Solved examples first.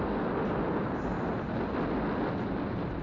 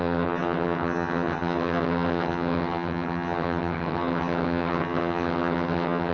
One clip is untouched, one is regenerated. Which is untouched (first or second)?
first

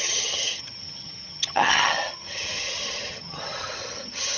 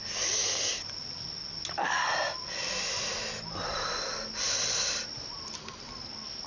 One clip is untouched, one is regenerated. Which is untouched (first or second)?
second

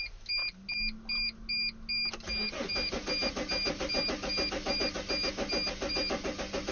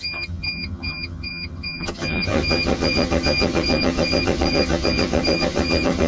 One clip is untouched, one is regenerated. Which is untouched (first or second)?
first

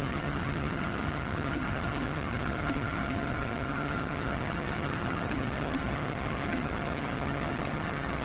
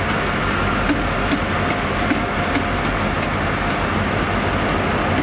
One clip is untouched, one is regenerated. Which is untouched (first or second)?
second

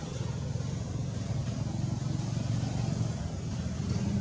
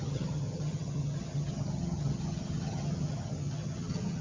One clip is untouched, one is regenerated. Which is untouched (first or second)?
first